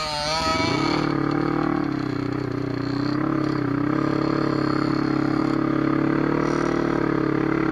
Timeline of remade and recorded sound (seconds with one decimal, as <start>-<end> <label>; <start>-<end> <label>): 0.0-7.7 recorded